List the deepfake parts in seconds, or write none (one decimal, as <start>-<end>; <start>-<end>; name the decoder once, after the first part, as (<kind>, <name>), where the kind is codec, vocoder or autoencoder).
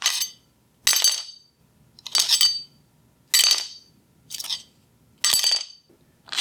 none